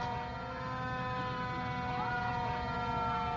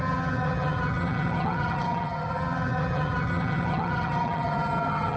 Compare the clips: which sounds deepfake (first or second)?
second